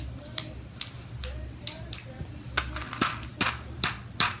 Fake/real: real